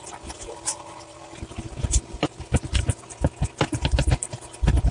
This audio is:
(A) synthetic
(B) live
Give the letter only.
B